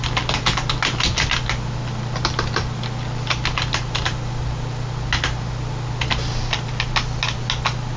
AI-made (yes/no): no